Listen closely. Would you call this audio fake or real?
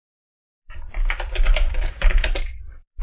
fake